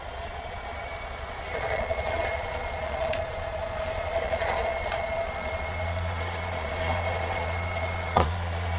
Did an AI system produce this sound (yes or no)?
yes